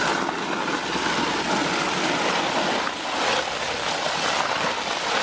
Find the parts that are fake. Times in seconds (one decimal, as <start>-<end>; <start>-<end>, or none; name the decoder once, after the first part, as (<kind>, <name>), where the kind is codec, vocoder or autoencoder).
none